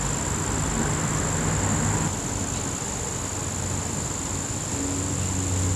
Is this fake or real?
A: real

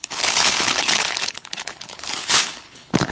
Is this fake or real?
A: fake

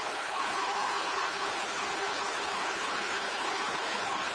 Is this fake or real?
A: fake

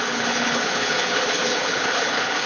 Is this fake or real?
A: fake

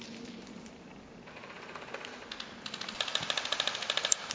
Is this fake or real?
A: real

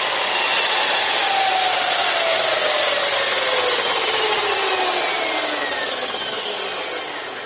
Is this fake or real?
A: real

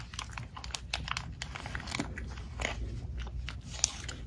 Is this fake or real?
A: real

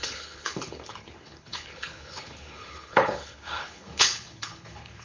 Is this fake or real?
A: fake